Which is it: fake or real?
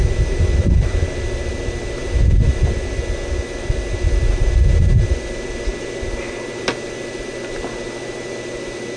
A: real